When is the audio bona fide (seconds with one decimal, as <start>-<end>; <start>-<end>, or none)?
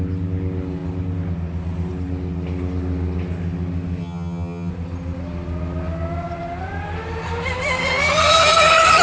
0.0-4.0; 4.7-9.0